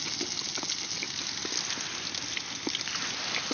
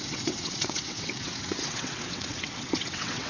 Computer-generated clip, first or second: second